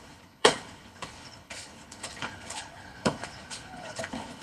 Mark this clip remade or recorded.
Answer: remade